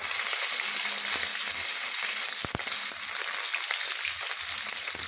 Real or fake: real